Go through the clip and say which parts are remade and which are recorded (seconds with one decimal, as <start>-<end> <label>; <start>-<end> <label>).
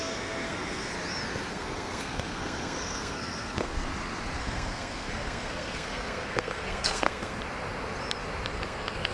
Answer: 0.0-0.9 remade; 0.9-1.5 recorded; 1.5-3.9 remade; 3.9-4.4 recorded; 4.4-7.4 remade; 7.4-8.5 recorded; 8.5-9.1 remade